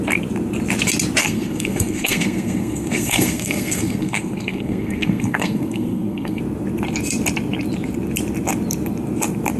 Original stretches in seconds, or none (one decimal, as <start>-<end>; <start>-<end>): 0.0-1.2; 6.4-9.6